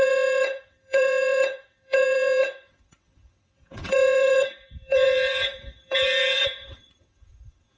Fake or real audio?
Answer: fake